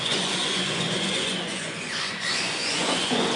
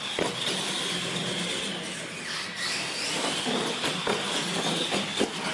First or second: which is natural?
second